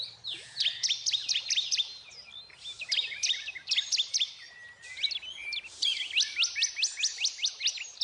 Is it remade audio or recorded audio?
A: recorded